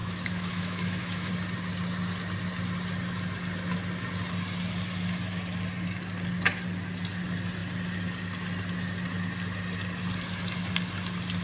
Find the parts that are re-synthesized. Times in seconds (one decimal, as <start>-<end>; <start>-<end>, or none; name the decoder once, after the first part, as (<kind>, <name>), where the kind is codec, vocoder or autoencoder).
0.0-1.3 (autoencoder, DAC-VAE)